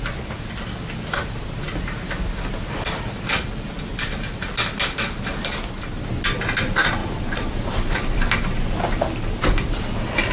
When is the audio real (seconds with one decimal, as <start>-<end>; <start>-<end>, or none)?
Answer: 0.0-10.3